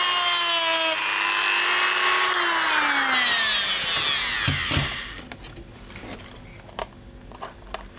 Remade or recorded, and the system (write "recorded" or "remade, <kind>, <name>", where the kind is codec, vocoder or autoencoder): recorded